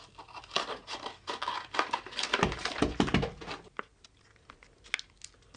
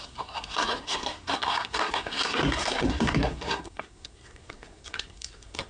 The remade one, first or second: second